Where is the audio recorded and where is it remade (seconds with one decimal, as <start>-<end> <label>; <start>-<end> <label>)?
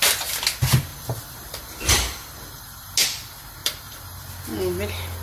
0.0-0.9 recorded; 0.9-2.8 remade; 2.8-3.6 recorded; 3.6-4.3 remade; 4.3-5.2 recorded